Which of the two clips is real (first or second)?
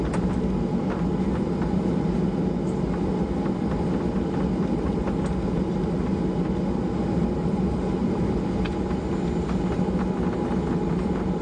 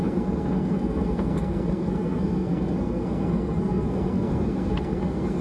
first